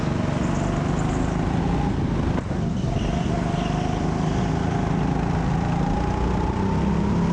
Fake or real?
real